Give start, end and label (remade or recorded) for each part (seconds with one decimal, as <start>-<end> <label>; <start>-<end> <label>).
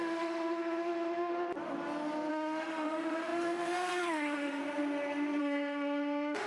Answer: 0.0-1.3 remade; 1.3-2.3 recorded; 2.3-4.6 remade; 4.6-5.4 recorded; 5.4-6.5 remade